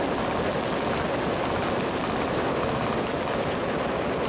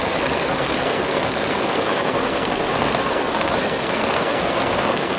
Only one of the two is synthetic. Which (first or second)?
second